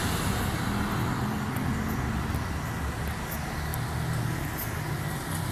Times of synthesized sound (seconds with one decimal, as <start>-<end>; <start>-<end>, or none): none